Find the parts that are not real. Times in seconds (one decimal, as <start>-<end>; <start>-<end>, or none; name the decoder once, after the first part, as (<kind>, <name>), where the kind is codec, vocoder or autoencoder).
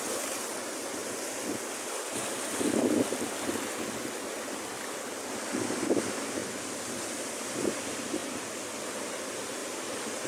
none